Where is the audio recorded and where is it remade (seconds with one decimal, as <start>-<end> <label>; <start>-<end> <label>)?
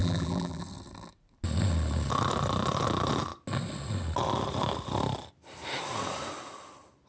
0.0-0.6 remade; 0.6-7.1 recorded